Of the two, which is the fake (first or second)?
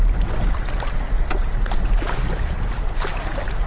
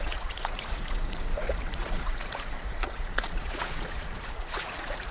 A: second